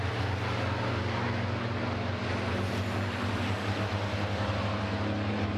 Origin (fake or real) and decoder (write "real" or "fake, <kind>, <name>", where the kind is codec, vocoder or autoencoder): real